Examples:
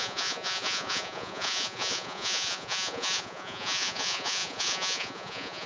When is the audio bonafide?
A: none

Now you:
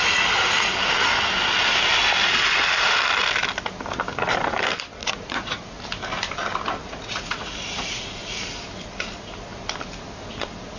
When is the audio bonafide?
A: 0.0-5.0; 5.7-6.8; 8.4-10.8

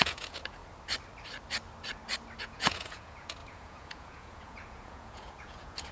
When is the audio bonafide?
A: 0.6-2.4

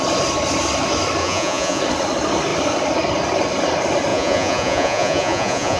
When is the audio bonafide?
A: 0.0-1.2; 1.8-4.1

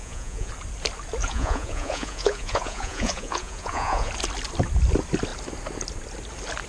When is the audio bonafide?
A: 0.5-1.2; 4.1-6.7